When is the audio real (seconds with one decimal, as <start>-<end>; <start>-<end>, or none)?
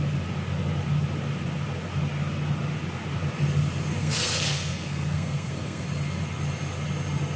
0.0-4.0; 5.8-7.4